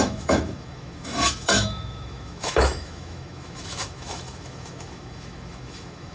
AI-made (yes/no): yes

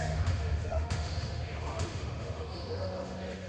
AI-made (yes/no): yes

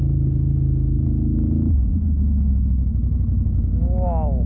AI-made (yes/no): yes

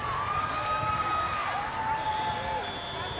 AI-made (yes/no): no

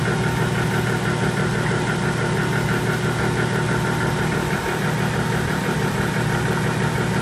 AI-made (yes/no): no